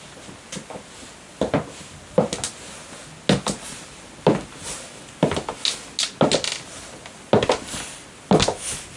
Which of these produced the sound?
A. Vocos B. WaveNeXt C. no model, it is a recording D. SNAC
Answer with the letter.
C